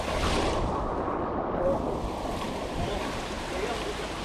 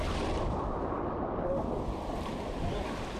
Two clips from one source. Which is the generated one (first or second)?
first